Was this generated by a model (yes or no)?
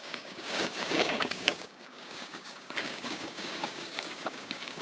yes